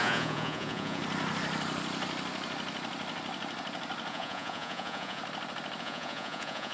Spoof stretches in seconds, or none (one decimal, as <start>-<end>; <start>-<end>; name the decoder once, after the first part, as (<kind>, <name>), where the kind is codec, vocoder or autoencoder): 0.0-1.0 (vocoder, Vocos); 4.1-5.2; 5.8-6.7